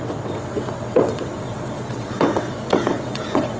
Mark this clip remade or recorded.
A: remade